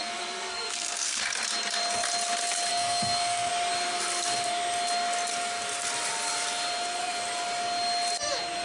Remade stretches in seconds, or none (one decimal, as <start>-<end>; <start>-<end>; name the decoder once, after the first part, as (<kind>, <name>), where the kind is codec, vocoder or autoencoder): 0.0-1.2 (codec, SNAC); 2.7-3.5